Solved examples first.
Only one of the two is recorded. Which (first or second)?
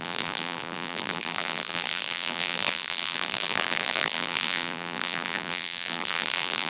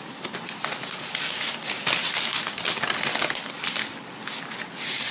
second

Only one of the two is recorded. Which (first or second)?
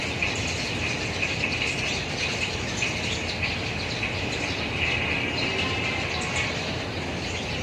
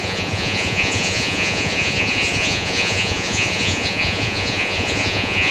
first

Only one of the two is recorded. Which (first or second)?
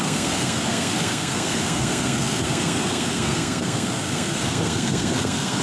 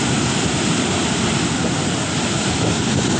second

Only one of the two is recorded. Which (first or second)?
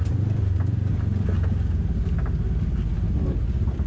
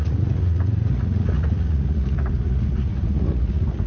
first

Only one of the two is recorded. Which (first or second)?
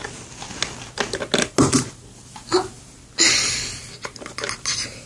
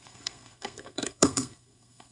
first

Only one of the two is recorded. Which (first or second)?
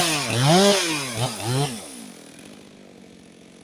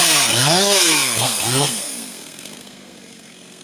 first